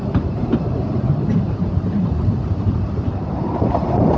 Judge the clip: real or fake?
fake